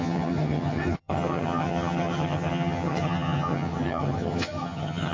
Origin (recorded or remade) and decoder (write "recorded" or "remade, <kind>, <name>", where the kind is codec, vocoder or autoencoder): remade, vocoder, HiFi-GAN